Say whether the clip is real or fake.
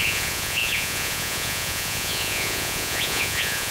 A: fake